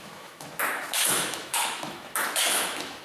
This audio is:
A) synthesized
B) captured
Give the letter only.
A